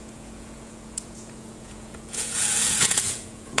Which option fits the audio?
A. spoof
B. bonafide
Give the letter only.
A